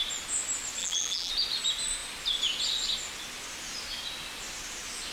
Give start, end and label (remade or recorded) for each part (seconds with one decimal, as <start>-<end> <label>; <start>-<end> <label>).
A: 0.0-0.8 recorded; 0.8-1.3 remade; 1.3-5.1 recorded